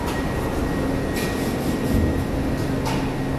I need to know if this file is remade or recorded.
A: recorded